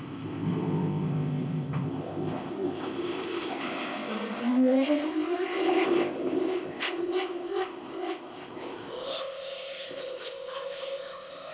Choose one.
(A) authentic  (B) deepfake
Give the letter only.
B